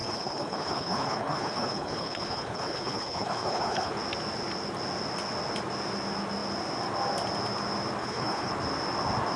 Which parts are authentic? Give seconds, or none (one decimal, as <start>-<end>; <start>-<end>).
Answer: 3.9-8.0; 8.5-9.4